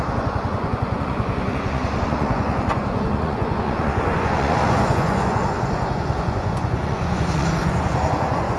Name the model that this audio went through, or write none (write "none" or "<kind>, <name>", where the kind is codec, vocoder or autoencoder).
vocoder, Vocos